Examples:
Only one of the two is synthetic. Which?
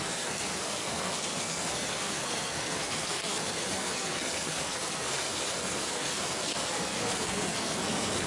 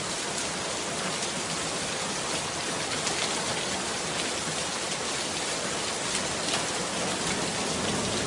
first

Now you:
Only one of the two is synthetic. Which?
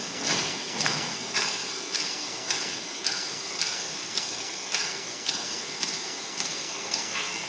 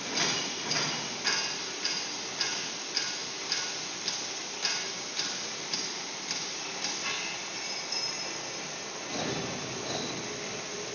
first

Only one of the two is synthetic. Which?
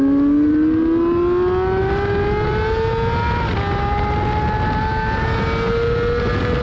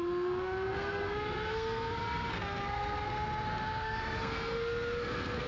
second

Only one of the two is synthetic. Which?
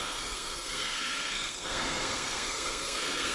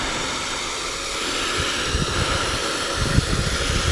first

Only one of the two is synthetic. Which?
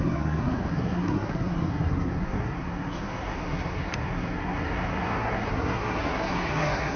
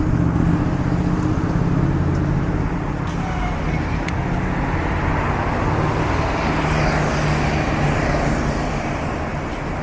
first